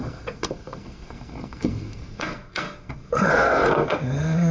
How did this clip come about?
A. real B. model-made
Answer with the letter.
B